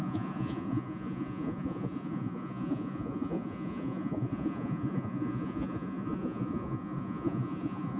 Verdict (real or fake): fake